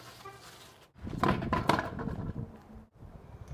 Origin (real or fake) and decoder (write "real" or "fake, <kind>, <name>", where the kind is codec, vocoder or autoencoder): real